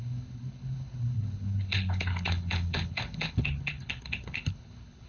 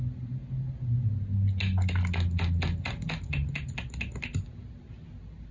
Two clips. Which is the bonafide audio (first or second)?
second